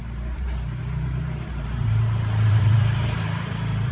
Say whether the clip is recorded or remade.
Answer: remade